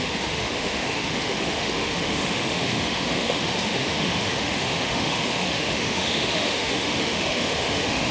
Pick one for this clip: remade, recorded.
remade